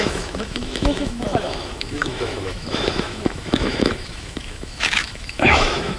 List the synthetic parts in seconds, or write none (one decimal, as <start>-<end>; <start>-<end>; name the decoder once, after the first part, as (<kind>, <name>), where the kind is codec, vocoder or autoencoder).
0.0-6.0 (autoencoder, DAC-VAE)